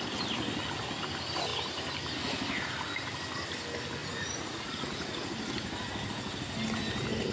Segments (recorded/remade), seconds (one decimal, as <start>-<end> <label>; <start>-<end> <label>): 0.0-4.0 recorded; 4.0-5.3 remade; 5.3-7.3 recorded